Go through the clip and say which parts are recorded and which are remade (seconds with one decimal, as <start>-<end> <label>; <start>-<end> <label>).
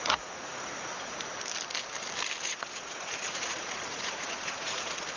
0.0-0.7 remade; 0.7-2.4 recorded; 2.4-5.2 remade